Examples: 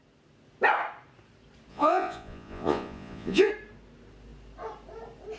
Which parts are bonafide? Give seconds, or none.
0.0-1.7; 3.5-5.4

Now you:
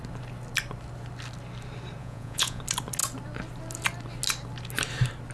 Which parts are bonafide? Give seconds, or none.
0.0-2.0; 2.6-5.3